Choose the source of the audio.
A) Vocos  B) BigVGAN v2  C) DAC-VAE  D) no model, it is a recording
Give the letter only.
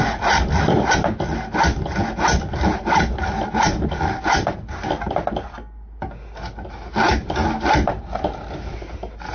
D